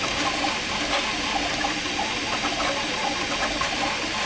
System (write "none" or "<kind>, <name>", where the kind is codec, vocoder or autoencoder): none